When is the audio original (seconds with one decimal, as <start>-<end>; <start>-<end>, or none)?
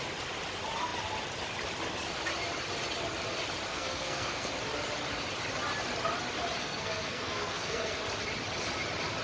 0.0-3.7; 4.5-6.6; 8.0-9.2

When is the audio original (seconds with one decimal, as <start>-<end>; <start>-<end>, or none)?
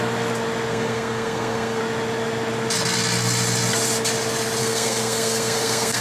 0.0-0.7; 1.8-4.6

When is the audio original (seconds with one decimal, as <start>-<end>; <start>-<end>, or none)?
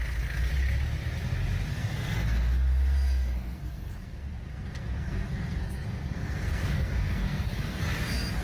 0.5-1.7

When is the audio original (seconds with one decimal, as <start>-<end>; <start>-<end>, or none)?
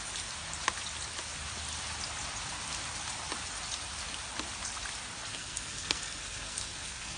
0.0-5.3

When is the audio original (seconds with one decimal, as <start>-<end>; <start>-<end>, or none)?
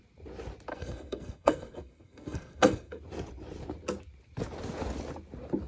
0.0-0.7; 3.0-5.7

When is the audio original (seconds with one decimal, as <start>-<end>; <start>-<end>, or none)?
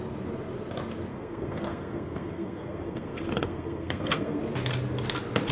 0.0-1.1; 4.4-5.5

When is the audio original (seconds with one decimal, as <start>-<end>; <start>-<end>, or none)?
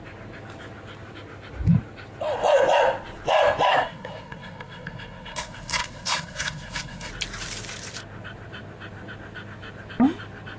0.0-3.7; 7.1-10.6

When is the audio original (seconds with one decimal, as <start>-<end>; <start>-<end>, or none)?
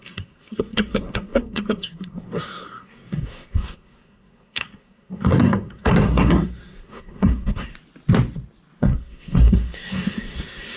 7.7-8.8